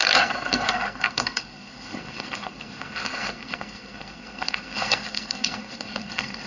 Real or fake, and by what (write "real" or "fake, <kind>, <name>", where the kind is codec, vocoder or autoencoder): fake, codec, SNAC